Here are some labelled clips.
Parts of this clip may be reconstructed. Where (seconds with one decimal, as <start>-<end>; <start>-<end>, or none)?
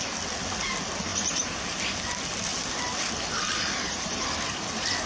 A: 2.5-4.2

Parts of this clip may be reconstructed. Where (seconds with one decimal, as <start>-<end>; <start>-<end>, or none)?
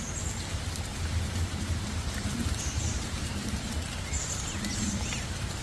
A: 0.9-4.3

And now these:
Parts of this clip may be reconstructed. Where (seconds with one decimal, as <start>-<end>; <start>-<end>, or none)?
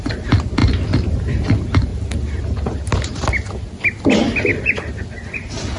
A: 0.6-1.4; 1.9-3.3; 4.5-5.1